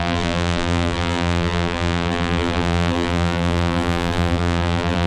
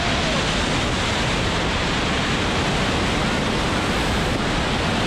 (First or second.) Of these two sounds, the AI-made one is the first